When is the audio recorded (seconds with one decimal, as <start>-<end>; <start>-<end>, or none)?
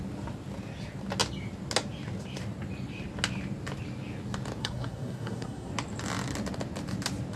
0.0-4.6; 5.7-7.4